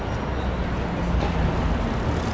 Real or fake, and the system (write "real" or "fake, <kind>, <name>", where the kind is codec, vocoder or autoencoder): real